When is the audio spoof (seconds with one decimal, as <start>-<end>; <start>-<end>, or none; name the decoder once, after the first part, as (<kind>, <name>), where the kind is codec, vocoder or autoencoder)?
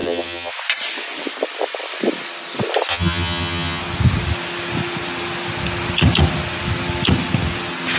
0.0-0.5 (vocoder, HiFi-GAN); 2.9-3.8